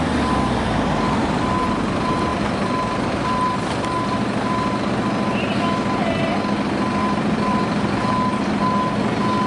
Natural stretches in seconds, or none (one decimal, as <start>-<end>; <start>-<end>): 0.0-7.0; 8.0-9.5